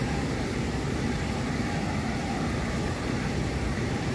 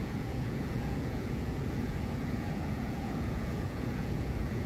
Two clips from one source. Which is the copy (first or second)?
second